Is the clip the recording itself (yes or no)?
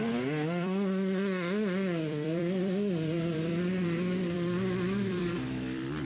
no